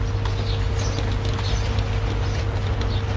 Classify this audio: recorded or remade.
recorded